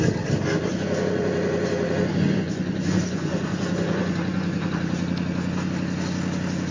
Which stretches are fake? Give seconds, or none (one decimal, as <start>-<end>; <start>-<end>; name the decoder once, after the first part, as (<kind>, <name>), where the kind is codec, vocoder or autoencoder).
0.7-4.7 (vocoder, Vocos)